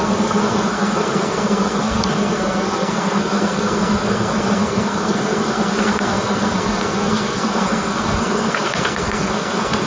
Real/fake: fake